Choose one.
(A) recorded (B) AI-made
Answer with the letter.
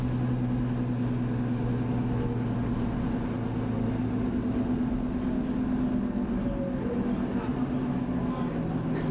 A